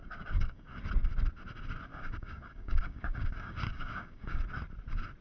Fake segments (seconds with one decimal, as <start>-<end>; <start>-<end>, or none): 0.0-0.8; 1.9-4.4